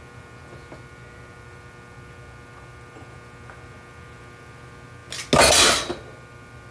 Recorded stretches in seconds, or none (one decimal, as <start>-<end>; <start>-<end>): 0.0-6.7